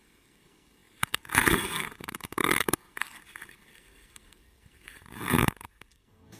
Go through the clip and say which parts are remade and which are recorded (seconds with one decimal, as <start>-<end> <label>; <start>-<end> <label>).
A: 0.0-6.4 remade